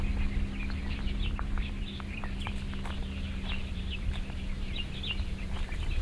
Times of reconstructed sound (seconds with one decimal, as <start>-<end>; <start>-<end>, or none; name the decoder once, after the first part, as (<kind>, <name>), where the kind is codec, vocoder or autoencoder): 0.8-2.5 (vocoder, BigVGAN v2); 3.6-4.2